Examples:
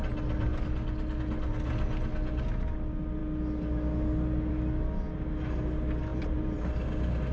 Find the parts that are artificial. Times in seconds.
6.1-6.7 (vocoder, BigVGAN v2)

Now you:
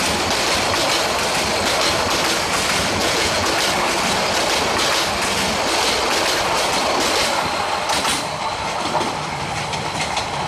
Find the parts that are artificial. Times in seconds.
3.0-3.5 (vocoder, Vocos)